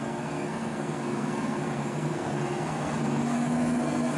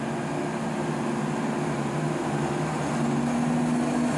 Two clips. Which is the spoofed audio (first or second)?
first